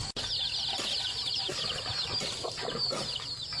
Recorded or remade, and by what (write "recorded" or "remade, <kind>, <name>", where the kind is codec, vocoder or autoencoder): recorded